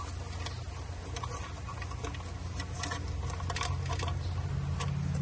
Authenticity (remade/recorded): recorded